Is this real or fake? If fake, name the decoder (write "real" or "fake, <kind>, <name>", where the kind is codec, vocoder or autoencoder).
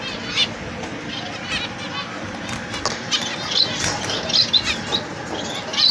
real